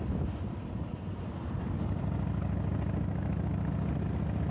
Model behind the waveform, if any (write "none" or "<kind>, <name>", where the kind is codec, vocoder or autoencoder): none